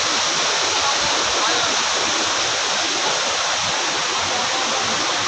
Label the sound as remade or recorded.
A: recorded